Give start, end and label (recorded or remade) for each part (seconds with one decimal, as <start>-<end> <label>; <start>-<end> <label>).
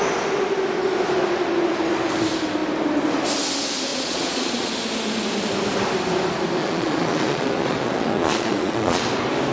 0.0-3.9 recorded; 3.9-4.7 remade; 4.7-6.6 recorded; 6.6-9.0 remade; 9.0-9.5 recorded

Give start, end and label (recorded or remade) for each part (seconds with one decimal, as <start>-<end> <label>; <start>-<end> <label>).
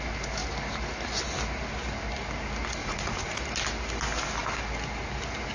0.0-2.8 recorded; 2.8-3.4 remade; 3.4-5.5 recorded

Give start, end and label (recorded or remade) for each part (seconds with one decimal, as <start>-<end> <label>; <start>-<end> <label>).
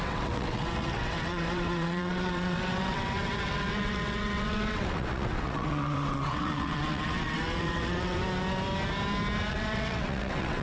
0.0-8.2 remade; 8.2-9.5 recorded; 9.5-10.6 remade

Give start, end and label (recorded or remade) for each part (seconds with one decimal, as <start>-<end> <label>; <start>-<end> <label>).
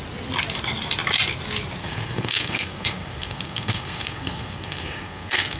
0.0-1.8 recorded; 1.8-5.6 remade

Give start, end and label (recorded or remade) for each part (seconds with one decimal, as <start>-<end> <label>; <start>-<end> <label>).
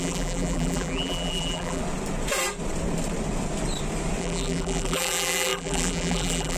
0.0-1.8 remade; 1.8-4.2 recorded; 4.2-6.6 remade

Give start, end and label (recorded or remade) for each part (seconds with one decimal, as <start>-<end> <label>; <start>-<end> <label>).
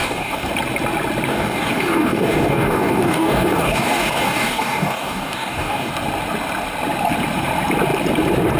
0.0-0.5 remade; 0.5-1.3 recorded; 1.3-5.9 remade; 5.9-8.6 recorded